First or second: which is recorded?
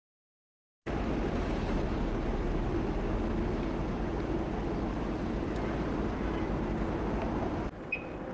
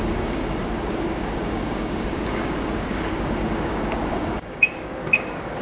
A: first